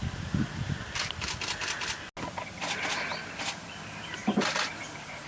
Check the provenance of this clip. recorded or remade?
recorded